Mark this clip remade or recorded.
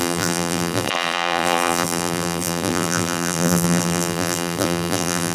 remade